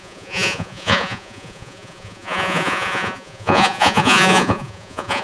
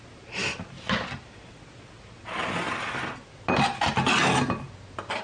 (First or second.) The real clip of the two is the second